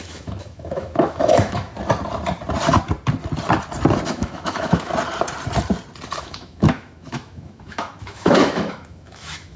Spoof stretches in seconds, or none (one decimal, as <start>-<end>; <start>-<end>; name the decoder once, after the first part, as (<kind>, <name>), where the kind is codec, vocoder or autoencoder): 0.0-1.7 (autoencoder, DAC-VAE); 4.1-4.9; 6.2-9.6